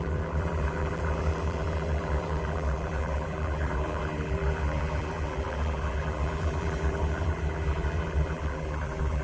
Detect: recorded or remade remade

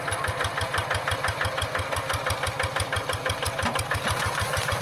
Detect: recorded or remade recorded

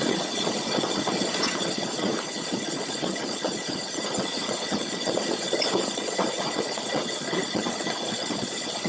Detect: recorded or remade remade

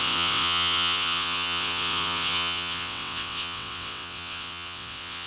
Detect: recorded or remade remade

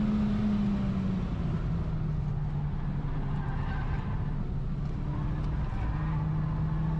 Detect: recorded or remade recorded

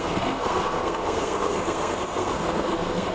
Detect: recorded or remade remade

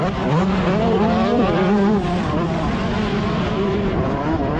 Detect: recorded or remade remade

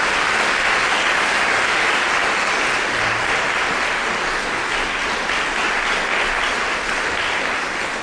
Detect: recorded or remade recorded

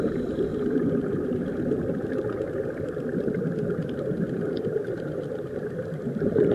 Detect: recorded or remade remade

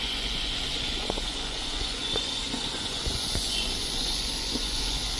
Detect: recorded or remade remade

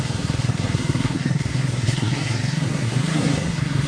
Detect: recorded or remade remade